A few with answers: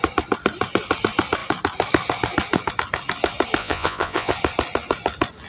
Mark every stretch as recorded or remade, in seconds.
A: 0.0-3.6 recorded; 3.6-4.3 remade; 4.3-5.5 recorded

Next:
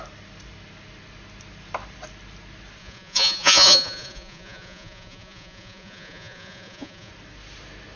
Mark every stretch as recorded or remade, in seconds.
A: 0.0-2.8 recorded; 2.8-7.1 remade; 7.1-8.0 recorded